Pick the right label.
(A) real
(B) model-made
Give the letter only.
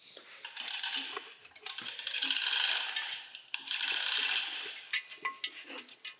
A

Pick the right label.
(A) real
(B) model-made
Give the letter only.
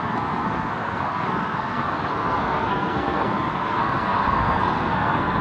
B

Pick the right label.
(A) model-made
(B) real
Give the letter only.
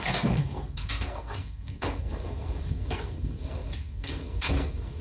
A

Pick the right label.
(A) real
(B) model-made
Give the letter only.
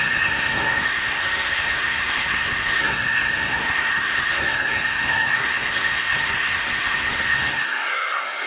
B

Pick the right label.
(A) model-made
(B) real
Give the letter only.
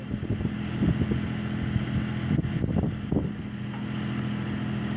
B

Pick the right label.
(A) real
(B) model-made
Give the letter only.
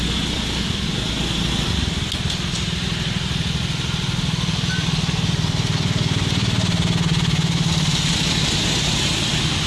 A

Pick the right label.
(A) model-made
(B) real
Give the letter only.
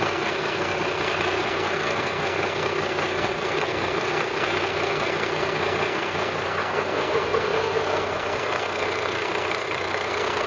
A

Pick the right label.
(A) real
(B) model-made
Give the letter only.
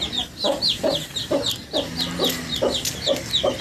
A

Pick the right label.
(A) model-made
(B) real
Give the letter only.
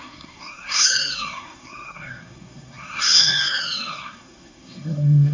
A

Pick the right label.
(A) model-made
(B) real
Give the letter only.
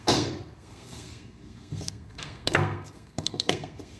A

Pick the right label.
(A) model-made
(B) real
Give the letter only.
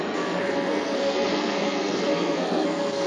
A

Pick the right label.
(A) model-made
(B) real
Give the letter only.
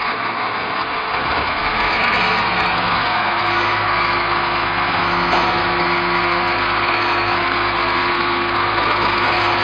A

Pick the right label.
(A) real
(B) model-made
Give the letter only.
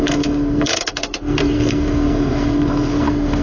B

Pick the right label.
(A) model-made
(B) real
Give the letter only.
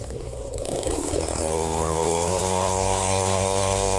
A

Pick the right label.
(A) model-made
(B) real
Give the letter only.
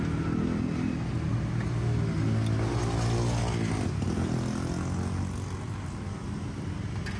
B